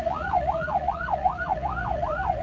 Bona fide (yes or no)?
no